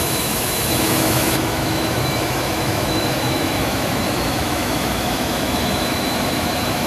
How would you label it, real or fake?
fake